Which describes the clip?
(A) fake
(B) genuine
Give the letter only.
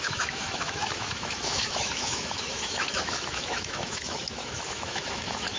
A